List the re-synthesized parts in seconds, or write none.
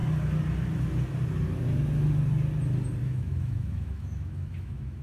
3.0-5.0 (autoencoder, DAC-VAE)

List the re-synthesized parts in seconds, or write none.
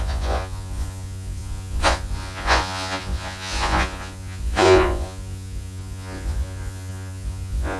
0.0-7.8 (vocoder, Vocos)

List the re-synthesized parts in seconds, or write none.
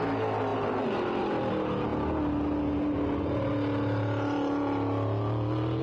0.0-0.5 (vocoder, BigVGAN v2); 1.2-1.9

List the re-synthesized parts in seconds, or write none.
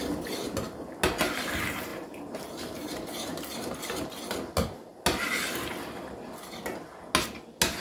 1.9-3.7 (vocoder, BigVGAN v2)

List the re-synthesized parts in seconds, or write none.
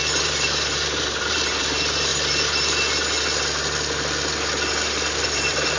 0.0-2.1 (vocoder, BigVGAN v2); 5.2-5.8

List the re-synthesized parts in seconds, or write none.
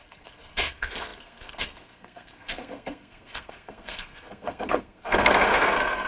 0.0-6.1 (codec, SNAC)